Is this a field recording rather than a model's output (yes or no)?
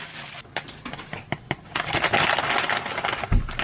yes